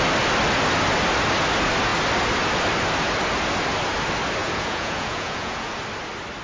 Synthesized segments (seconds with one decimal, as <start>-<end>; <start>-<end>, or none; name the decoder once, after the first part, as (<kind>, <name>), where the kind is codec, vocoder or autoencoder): 4.4-5.8 (vocoder, Vocos)